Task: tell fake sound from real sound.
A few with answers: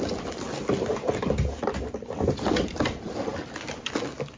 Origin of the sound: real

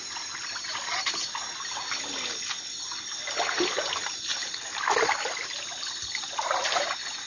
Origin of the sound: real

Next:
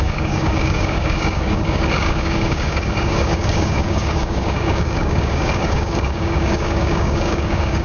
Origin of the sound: fake